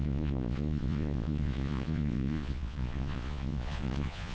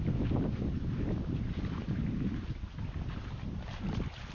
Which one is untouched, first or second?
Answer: second